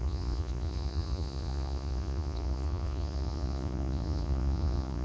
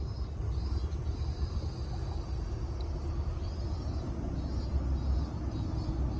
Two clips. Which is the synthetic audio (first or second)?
first